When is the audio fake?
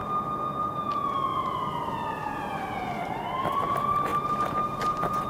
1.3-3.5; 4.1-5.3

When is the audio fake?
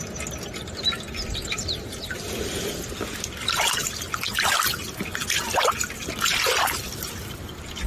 none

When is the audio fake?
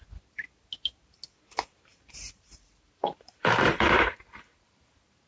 1.9-5.3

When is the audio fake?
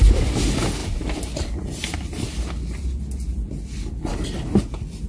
0.8-2.8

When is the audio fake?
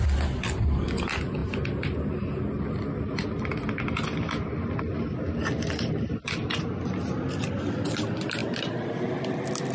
none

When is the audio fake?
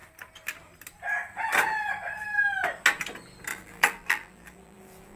3.5-5.2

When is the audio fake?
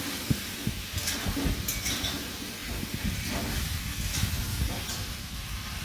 none